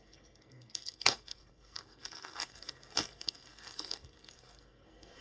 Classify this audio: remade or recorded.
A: remade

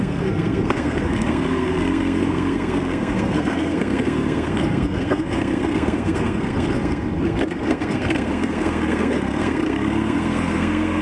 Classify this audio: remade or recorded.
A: remade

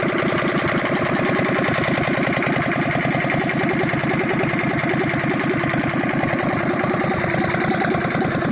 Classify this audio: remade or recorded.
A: recorded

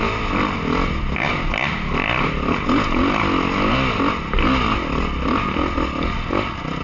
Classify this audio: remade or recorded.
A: recorded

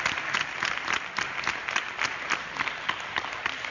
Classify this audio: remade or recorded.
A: recorded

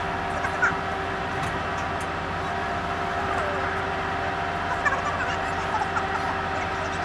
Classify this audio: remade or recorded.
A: recorded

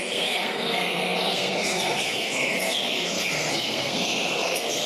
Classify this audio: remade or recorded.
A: remade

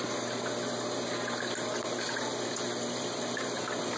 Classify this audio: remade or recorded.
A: recorded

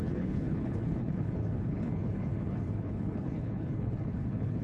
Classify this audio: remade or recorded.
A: remade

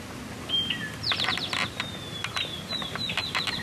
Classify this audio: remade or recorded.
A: recorded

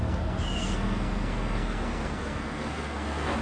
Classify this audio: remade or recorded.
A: remade